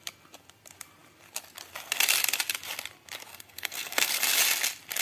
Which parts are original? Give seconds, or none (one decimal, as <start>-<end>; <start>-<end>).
0.0-3.3; 4.1-5.0